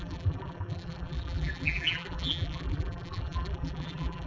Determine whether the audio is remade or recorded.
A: remade